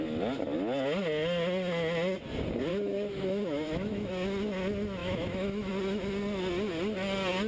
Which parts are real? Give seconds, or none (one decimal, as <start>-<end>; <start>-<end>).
0.0-2.7; 4.1-5.0; 5.7-7.5